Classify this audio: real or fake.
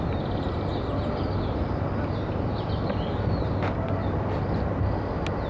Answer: real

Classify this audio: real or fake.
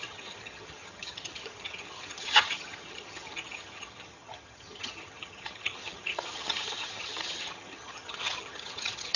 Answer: fake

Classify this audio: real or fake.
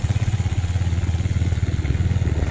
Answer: fake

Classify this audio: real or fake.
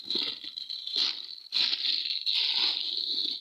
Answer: real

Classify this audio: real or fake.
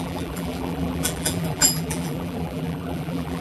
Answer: fake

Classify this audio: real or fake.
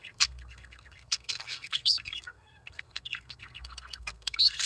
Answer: fake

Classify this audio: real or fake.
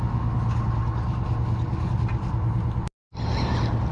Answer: real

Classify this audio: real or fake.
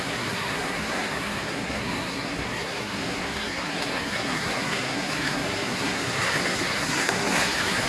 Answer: fake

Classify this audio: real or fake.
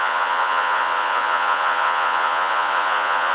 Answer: fake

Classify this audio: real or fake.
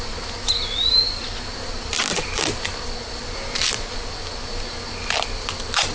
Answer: real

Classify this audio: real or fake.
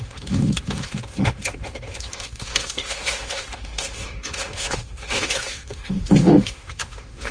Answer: fake